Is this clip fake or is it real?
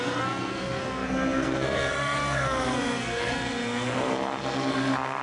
fake